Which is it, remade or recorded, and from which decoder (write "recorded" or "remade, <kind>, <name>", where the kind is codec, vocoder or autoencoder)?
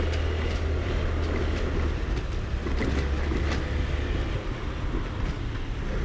recorded